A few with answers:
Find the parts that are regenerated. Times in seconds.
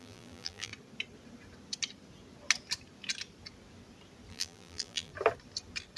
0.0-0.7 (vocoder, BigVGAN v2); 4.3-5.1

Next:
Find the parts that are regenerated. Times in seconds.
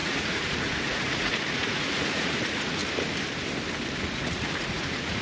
0.0-2.8 (vocoder, Vocos); 4.0-5.2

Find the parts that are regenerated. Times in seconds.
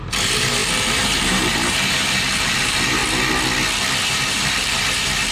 0.0-3.0 (vocoder, BigVGAN v2); 4.0-5.3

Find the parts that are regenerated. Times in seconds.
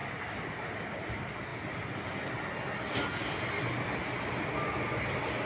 none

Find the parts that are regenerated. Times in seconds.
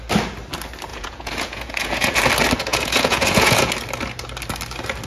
0.9-2.2 (vocoder, Vocos); 2.7-3.7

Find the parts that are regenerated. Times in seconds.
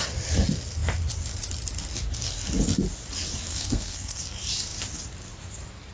3.5-4.2 (codec, SNAC)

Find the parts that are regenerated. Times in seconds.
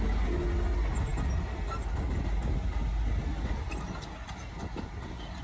none